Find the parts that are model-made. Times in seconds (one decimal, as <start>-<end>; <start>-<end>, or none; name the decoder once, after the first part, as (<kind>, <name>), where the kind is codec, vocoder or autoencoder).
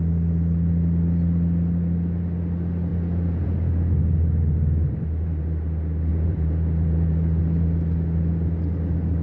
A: 2.9-3.5 (vocoder, Vocos); 6.1-7.4